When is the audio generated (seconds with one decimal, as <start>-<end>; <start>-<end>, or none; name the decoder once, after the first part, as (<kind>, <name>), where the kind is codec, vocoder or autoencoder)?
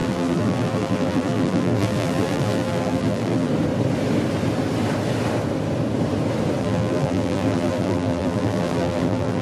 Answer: 0.0-3.5 (vocoder, BigVGAN v2); 6.6-9.4